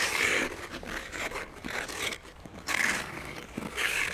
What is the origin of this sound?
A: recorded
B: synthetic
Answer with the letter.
B